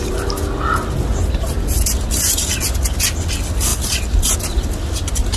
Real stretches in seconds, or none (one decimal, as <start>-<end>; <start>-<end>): 0.0-1.1; 1.9-3.7; 4.4-5.4